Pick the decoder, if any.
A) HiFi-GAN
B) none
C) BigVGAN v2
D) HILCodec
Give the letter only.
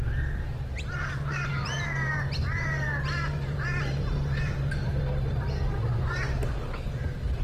C